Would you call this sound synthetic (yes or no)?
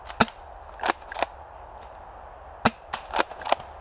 no